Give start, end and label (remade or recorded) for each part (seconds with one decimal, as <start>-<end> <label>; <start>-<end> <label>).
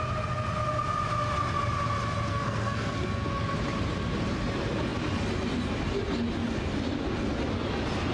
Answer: 0.0-2.3 recorded; 2.3-3.3 remade; 3.3-8.1 recorded